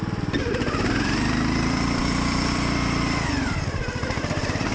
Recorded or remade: remade